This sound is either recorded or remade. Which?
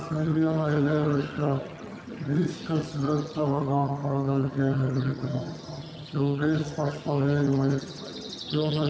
remade